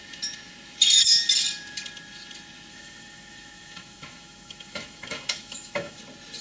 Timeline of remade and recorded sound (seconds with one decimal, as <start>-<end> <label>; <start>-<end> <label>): 0.0-2.7 recorded; 2.7-6.0 remade; 6.0-6.4 recorded